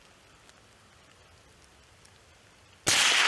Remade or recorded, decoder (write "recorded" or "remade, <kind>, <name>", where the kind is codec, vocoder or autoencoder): recorded